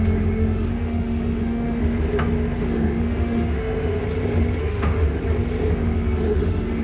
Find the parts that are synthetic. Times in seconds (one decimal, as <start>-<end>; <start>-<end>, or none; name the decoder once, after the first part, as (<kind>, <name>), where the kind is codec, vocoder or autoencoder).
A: 0.0-1.8 (autoencoder, DAC-VAE); 2.6-4.0; 4.6-5.1; 5.7-6.8